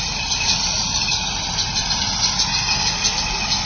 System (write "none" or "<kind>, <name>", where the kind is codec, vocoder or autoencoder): none